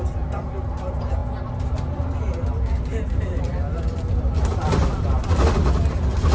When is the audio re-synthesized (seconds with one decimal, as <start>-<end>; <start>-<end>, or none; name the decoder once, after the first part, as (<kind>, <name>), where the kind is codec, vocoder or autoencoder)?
none

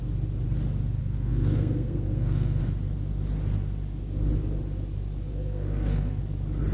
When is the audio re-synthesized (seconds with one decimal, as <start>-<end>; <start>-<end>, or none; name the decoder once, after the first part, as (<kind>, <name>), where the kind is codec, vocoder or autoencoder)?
1.0-2.6 (codec, SNAC); 5.3-6.2

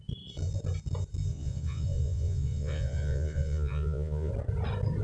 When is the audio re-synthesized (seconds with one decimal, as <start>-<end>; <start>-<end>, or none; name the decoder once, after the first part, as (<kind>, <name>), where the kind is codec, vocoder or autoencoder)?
1.3-4.3 (vocoder, Vocos)

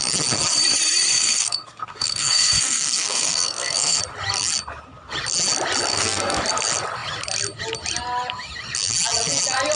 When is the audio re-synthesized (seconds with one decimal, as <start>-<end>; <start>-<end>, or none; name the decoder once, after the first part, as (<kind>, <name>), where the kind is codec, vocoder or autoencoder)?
1.1-4.0 (codec, SNAC); 5.9-6.4